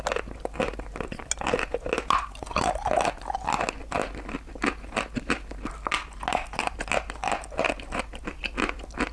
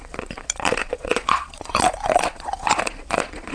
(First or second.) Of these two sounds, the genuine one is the first